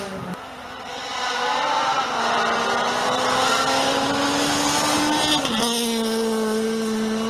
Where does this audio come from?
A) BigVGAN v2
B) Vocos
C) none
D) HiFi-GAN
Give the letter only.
C